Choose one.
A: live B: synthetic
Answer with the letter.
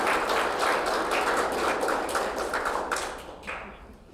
A